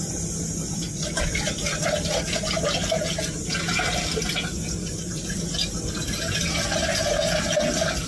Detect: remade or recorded remade